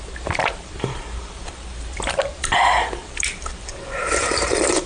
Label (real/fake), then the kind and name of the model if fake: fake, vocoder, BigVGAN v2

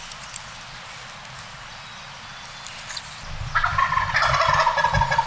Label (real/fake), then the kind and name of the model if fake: real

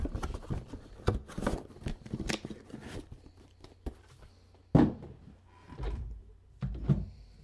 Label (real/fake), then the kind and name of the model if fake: real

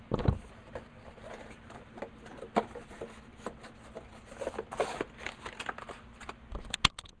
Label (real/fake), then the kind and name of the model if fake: real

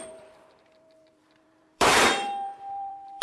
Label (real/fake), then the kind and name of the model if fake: fake, vocoder, BigVGAN v2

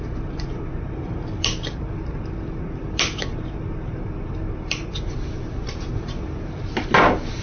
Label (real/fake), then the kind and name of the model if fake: fake, vocoder, BigVGAN v2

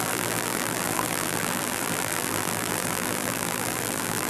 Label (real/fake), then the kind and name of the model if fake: fake, vocoder, BigVGAN v2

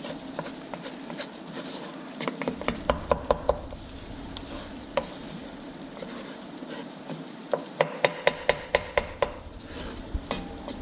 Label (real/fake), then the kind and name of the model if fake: fake, vocoder, BigVGAN v2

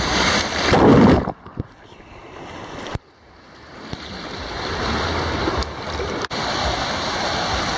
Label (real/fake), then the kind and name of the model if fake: fake, vocoder, BigVGAN v2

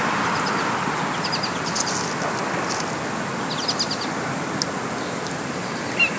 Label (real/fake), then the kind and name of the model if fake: real